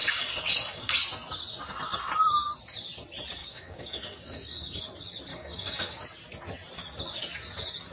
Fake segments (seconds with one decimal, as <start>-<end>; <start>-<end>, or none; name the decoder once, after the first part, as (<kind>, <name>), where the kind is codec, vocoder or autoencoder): 0.0-0.9 (codec, DAC); 3.4-4.8; 5.3-6.0

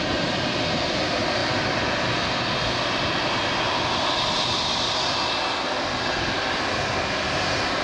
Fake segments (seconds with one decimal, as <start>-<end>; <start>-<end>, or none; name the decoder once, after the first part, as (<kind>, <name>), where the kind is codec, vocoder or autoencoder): none

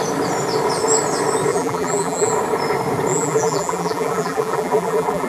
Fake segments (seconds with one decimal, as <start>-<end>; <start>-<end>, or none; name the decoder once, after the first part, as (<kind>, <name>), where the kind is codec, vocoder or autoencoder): 1.5-2.3 (vocoder, BigVGAN v2); 3.1-5.3

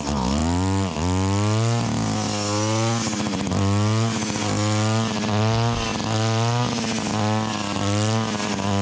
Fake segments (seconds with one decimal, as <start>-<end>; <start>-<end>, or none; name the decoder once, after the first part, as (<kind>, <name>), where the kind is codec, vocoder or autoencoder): none

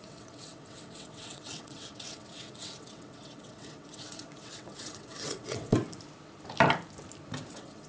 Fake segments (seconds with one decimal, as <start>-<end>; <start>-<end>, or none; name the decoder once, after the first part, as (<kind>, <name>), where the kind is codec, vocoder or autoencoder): 0.0-5.7 (vocoder, WaveNeXt); 7.5-7.9

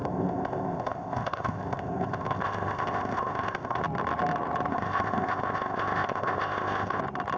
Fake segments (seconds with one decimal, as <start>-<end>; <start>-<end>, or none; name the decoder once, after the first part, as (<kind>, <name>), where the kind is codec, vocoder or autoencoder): 0.0-3.8 (codec, ZipCodec); 4.7-7.0

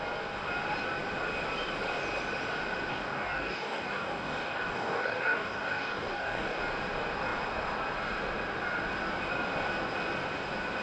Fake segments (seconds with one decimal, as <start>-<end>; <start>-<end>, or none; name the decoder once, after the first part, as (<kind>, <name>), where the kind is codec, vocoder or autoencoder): 2.9-6.6 (codec, DAC)